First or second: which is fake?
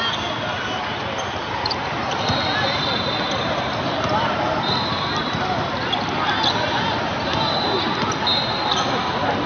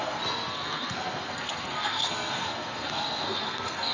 second